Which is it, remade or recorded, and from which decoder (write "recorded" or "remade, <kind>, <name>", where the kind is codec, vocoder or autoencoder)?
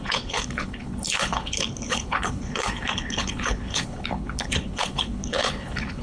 remade, codec, HILCodec